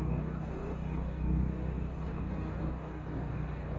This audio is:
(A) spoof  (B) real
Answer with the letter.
A